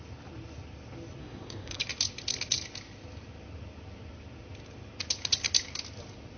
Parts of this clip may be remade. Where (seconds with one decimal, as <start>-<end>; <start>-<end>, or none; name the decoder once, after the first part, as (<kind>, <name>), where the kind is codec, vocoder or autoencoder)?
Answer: 1.2-1.8 (codec, SNAC)